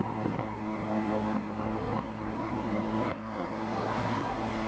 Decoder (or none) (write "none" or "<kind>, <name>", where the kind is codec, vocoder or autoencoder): codec, SNAC